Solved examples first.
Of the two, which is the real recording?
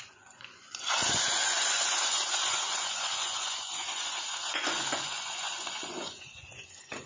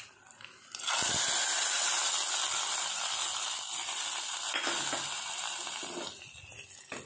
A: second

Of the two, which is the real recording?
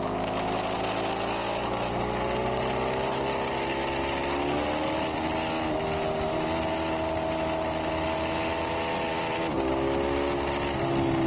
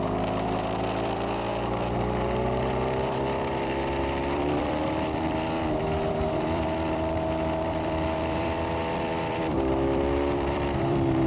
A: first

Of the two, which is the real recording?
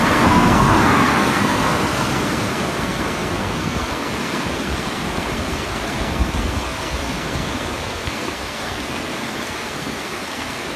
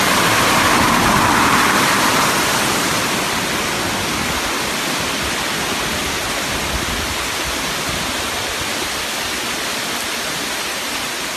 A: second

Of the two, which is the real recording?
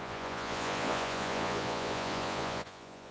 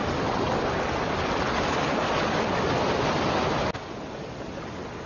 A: second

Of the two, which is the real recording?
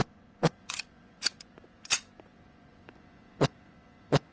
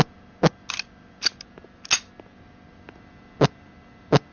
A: second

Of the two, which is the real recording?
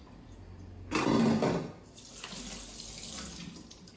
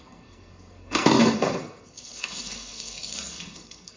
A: first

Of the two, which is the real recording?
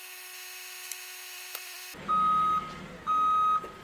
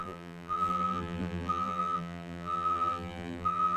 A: first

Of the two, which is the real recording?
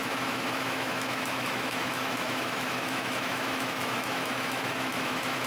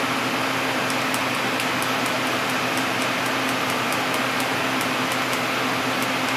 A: second